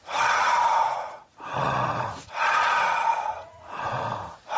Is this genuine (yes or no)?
no